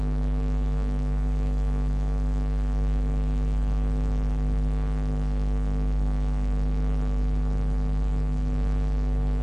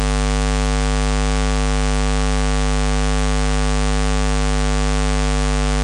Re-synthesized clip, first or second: first